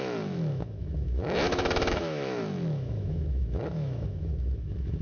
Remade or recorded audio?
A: remade